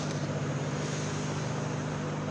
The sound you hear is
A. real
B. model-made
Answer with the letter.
A